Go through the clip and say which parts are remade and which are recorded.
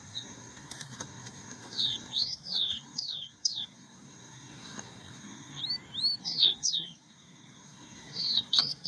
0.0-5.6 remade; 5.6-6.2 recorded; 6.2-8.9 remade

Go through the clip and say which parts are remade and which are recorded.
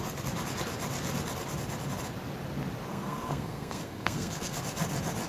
0.0-2.9 recorded; 2.9-4.6 remade; 4.6-5.3 recorded